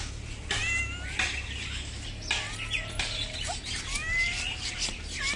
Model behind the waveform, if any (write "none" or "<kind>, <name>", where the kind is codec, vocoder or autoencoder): none